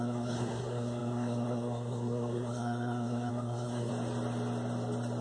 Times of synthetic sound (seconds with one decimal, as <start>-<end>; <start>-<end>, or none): 0.0-3.9